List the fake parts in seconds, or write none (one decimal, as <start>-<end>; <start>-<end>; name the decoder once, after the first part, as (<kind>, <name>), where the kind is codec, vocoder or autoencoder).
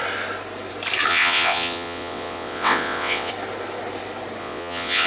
1.1-3.3 (vocoder, WaveNeXt); 4.4-5.1